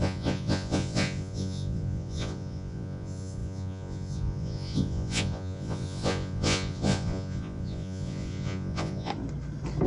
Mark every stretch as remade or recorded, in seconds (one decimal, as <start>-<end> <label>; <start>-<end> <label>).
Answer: 0.0-9.1 remade; 9.1-9.9 recorded